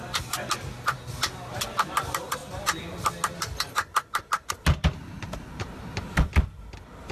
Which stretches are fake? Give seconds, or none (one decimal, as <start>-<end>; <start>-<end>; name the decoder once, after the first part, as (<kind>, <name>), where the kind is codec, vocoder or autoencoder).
none